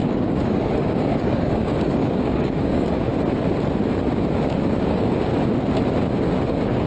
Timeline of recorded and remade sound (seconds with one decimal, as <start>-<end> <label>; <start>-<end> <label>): 0.0-3.1 remade; 3.1-4.7 recorded; 4.7-5.3 remade; 5.3-6.5 recorded; 6.5-6.9 remade